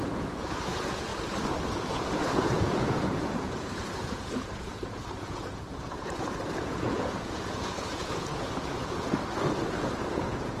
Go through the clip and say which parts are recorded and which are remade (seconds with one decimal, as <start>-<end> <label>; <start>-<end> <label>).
0.0-1.1 remade; 1.1-1.7 recorded; 1.7-9.1 remade; 9.1-10.1 recorded; 10.1-10.6 remade